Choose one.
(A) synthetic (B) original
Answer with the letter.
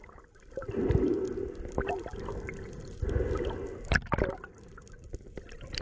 B